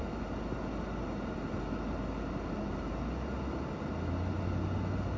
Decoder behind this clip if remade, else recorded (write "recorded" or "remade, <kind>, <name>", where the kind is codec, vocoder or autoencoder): recorded